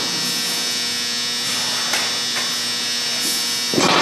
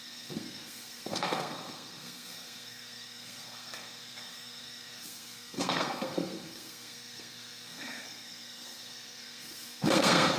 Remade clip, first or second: second